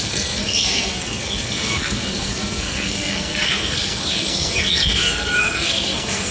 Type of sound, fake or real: fake